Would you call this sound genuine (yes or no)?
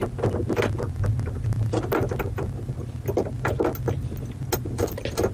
yes